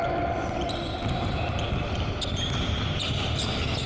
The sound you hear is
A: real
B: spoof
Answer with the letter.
B